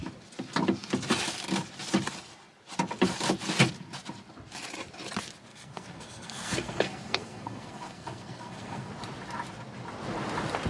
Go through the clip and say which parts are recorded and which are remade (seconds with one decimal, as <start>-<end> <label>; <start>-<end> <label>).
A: 0.0-5.5 recorded; 5.5-8.9 remade; 8.9-10.7 recorded